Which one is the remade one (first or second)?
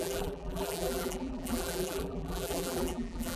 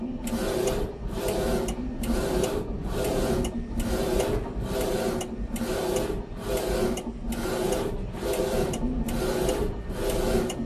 first